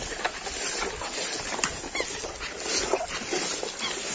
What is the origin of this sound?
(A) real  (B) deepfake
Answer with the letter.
A